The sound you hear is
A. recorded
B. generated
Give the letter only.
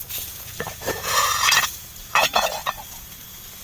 B